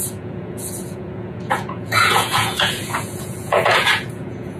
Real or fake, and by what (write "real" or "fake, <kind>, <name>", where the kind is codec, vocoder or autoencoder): fake, vocoder, Vocos